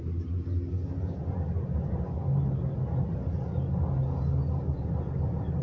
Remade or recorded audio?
recorded